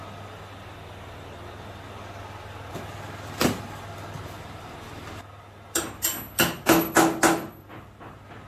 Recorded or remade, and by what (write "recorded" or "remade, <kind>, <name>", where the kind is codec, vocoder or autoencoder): recorded